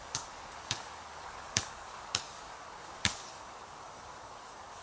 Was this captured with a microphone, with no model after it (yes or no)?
no